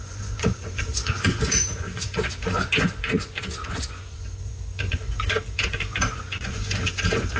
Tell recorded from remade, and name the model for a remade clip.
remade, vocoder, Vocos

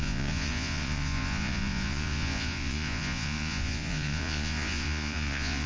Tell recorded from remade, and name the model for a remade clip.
remade, vocoder, Vocos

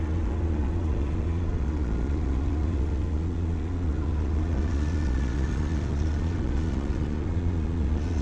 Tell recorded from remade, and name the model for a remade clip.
remade, vocoder, Vocos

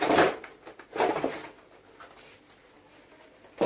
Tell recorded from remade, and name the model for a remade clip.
recorded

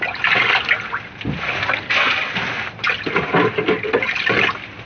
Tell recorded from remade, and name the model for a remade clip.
recorded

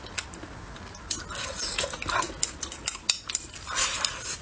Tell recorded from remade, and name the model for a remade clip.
recorded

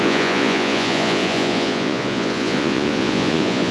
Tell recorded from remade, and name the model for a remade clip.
remade, vocoder, Vocos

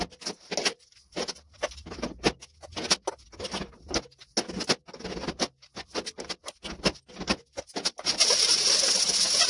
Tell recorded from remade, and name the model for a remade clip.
recorded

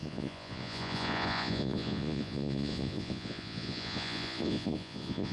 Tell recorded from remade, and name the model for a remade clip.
remade, vocoder, Vocos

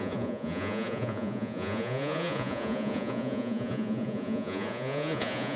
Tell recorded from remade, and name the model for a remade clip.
remade, vocoder, Vocos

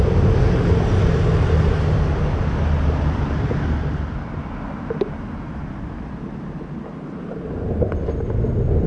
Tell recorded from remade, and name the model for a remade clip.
recorded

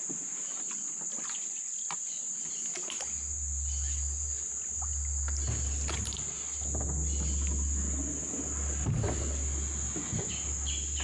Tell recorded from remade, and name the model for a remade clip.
recorded